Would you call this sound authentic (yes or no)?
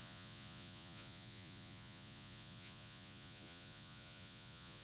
no